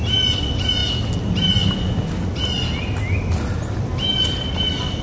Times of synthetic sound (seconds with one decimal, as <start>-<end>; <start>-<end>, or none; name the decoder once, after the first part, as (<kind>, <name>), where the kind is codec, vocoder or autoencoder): none